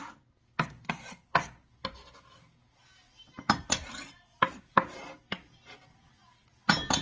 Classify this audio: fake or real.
real